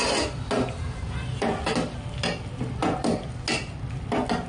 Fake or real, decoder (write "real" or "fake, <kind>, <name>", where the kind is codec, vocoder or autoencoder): real